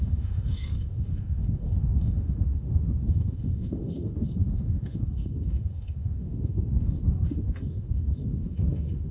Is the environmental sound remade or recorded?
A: remade